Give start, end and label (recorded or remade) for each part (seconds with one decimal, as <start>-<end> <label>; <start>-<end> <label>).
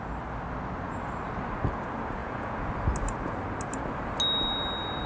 0.0-2.2 recorded; 2.2-2.7 remade; 2.7-5.1 recorded